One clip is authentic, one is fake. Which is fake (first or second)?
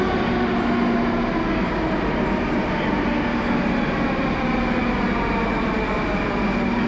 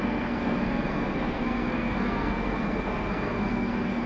second